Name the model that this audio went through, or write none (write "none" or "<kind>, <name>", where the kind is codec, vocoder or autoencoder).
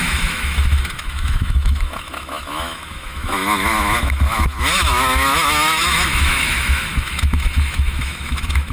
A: autoencoder, DAC-VAE